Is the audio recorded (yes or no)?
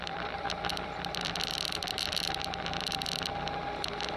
no